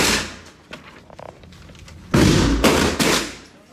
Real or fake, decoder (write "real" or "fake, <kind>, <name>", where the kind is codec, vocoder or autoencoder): real